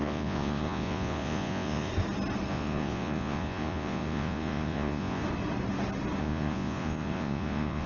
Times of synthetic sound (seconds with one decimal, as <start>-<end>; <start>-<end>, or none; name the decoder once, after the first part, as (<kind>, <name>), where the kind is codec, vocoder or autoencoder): 0.0-1.9 (vocoder, Vocos); 2.5-5.2; 6.2-7.9